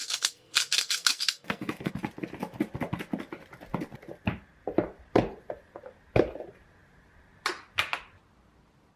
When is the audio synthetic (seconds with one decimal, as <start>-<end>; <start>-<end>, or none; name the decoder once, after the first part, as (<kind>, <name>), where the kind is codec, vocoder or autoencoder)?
0.0-1.9 (codec, SNAC)